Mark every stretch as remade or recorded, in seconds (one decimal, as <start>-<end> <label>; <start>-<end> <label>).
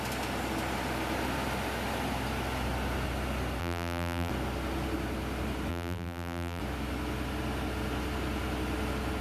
0.0-3.6 recorded; 3.6-4.3 remade; 4.3-5.7 recorded; 5.7-6.6 remade; 6.6-9.2 recorded